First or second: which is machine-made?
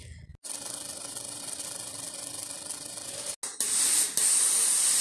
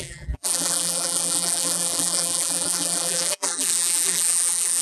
second